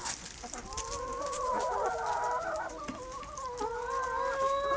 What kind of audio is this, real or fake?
real